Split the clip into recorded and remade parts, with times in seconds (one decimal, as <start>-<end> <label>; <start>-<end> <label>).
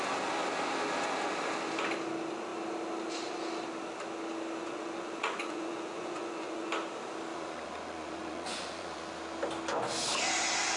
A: 0.0-4.6 recorded; 4.6-6.7 remade; 6.7-7.3 recorded; 7.3-9.1 remade; 9.1-10.8 recorded